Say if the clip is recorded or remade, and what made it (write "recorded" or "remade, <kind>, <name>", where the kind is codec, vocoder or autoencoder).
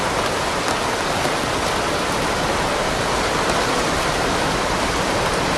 recorded